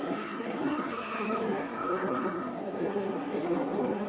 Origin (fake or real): fake